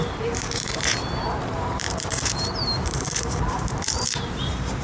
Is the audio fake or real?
fake